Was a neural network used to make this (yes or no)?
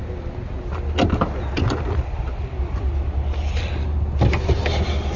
no